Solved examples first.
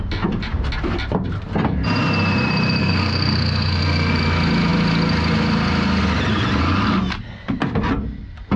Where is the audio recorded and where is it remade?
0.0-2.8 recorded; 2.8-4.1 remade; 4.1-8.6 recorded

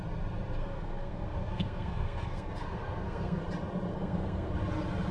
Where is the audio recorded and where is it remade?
0.0-0.6 recorded; 0.6-3.4 remade; 3.4-3.9 recorded; 3.9-4.5 remade; 4.5-5.1 recorded